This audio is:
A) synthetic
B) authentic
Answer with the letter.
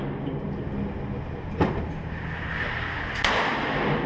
B